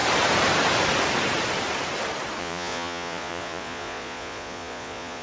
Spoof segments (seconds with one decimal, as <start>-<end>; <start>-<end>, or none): 2.4-5.2